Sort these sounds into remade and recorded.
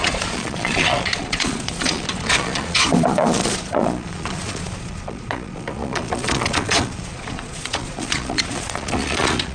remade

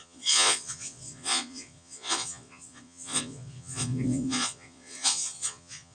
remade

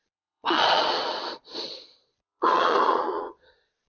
remade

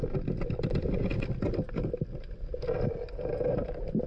recorded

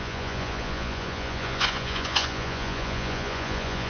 remade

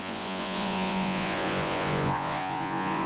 remade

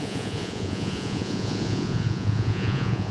remade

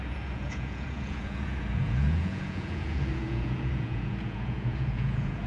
remade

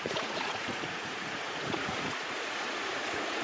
remade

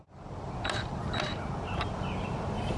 recorded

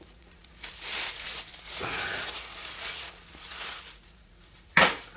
remade